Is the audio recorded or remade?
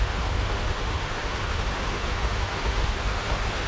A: remade